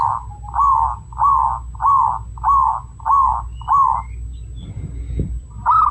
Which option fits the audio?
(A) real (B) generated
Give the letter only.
A